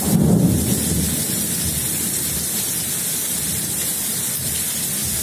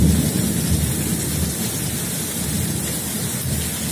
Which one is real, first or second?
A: second